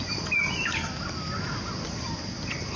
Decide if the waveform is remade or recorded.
recorded